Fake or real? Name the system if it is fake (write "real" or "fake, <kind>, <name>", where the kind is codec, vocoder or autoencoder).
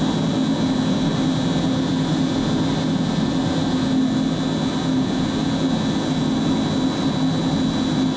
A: real